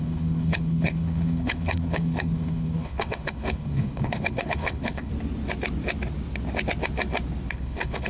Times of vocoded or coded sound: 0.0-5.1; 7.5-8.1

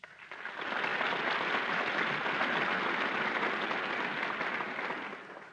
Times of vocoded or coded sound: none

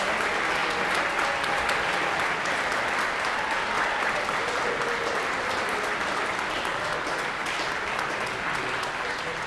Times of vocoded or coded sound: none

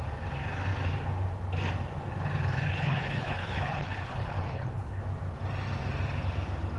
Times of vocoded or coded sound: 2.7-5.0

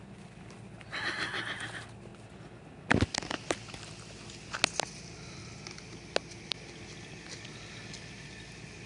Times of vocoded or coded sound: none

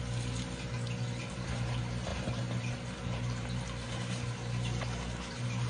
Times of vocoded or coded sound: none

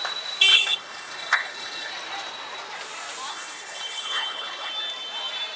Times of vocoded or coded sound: 0.5-1.9; 3.3-4.7